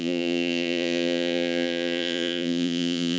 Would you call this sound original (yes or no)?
no